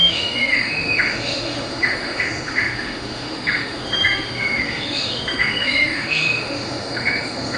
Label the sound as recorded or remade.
remade